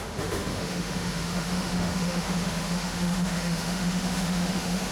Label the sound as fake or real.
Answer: fake